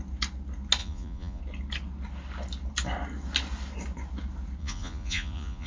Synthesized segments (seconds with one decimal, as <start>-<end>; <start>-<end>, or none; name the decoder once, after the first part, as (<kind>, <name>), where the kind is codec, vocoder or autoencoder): 0.8-1.4 (vocoder, Vocos); 4.6-5.7